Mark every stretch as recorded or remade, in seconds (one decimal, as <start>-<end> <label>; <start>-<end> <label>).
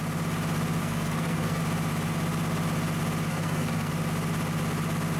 0.0-0.8 recorded; 0.8-1.6 remade; 1.6-3.3 recorded; 3.3-3.9 remade; 3.9-5.2 recorded